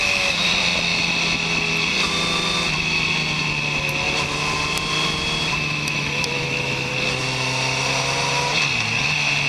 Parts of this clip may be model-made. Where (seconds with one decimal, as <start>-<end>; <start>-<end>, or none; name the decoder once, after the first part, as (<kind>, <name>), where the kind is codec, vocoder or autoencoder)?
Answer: 0.0-0.5 (autoencoder, DAC-VAE); 5.5-6.9

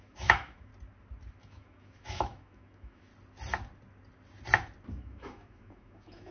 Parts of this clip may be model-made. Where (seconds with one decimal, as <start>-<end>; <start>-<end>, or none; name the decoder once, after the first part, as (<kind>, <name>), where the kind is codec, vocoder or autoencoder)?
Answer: 0.0-0.7 (autoencoder, DAC-VAE); 1.4-3.1; 4.9-6.3